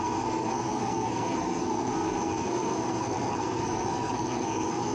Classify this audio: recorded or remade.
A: remade